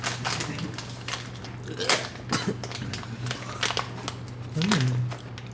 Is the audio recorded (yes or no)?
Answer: yes